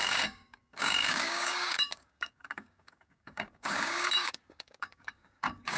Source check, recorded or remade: remade